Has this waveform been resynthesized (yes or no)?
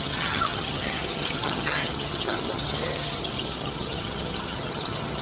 yes